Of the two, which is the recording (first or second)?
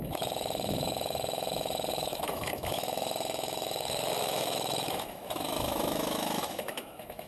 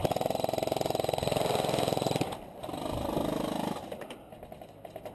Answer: second